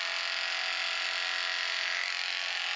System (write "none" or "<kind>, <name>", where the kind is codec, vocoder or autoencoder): none